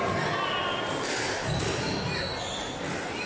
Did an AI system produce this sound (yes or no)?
no